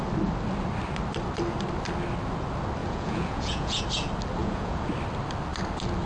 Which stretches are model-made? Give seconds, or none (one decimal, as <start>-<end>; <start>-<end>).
2.8-3.8; 4.4-4.9